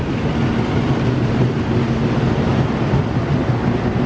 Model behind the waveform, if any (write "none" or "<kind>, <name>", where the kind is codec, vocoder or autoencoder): none